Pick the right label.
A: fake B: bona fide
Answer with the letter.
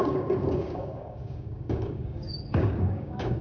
A